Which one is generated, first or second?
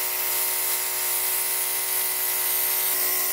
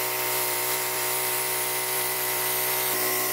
second